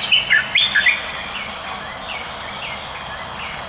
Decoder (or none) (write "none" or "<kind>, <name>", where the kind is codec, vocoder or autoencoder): none